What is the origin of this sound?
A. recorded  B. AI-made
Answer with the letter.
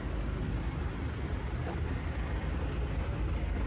A